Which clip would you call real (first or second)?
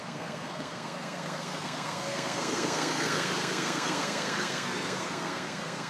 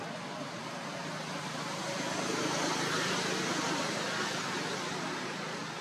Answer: second